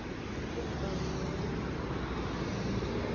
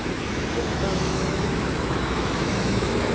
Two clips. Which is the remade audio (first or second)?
second